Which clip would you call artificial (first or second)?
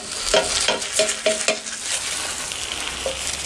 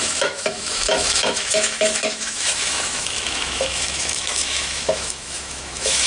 second